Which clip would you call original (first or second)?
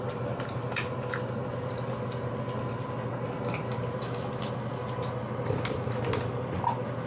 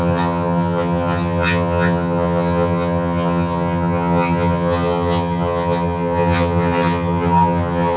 first